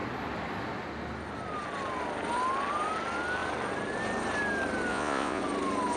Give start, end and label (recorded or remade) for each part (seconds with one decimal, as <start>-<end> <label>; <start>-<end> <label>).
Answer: 0.0-4.9 recorded; 4.9-5.4 remade; 5.4-6.0 recorded